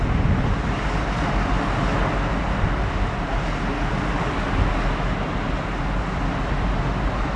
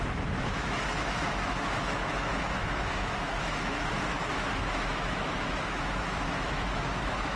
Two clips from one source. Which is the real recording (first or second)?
first